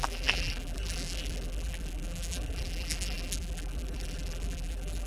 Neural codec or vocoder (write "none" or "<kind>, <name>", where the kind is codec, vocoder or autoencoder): vocoder, BigVGAN v2